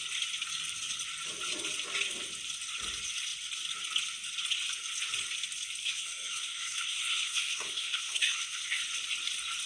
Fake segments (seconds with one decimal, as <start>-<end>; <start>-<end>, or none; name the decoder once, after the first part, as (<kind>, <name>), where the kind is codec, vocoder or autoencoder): 5.8-8.8 (codec, SNAC)